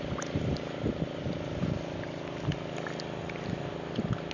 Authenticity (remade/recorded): recorded